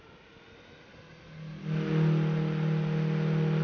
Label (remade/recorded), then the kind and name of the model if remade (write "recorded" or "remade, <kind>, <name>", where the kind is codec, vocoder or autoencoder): recorded